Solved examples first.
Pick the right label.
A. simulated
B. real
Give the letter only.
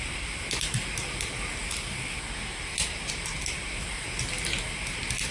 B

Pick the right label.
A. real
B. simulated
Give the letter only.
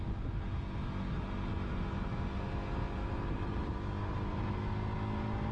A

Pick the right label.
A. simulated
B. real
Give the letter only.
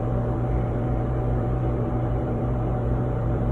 A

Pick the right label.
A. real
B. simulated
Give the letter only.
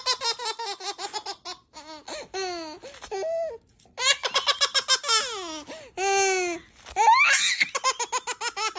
A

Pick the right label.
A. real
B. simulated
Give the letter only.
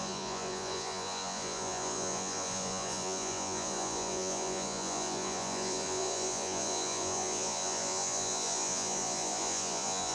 B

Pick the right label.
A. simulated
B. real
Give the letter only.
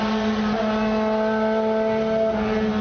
B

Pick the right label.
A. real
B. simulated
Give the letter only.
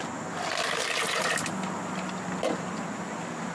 A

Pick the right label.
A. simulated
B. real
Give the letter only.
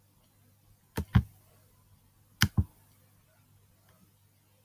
B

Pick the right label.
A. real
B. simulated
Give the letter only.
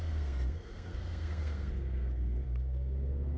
B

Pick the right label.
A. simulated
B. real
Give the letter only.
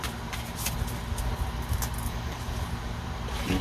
B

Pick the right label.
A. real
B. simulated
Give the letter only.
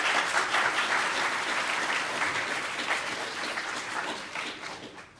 B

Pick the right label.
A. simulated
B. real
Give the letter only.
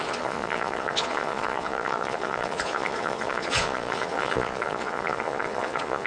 A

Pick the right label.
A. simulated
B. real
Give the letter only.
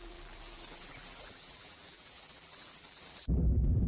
A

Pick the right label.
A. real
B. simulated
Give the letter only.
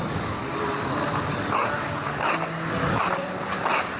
A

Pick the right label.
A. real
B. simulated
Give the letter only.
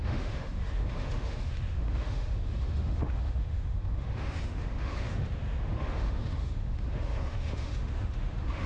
B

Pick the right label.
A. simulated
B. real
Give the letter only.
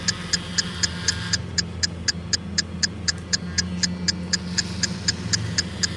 B